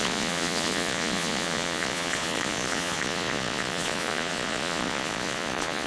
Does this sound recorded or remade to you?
remade